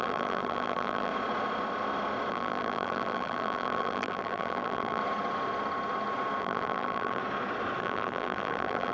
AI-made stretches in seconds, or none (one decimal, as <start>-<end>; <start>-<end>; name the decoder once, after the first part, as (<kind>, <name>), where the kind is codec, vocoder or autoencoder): 0.0-1.1 (vocoder, BigVGAN v2); 2.3-5.0; 6.4-7.2; 7.8-8.9